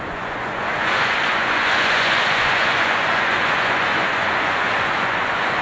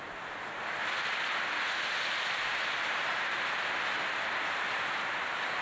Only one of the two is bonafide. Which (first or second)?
second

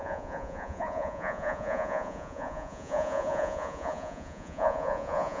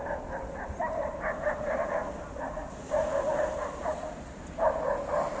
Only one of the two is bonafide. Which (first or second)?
second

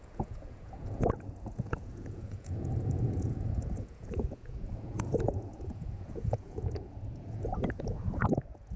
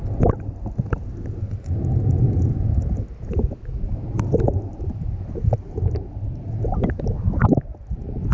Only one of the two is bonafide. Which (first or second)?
second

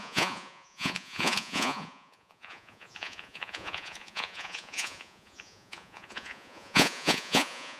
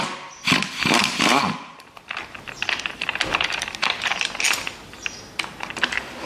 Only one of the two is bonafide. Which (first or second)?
second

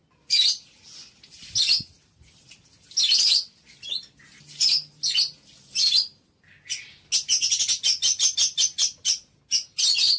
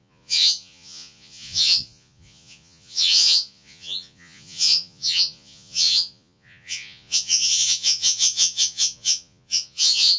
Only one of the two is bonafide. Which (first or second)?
first